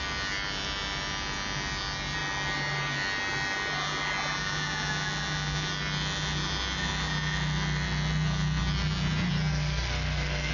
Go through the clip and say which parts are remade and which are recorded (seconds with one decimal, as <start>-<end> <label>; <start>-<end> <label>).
0.0-9.5 recorded; 9.5-10.5 remade